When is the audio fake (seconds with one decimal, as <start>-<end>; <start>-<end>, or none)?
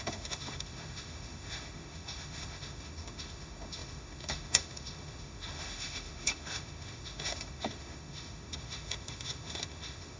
0.0-10.2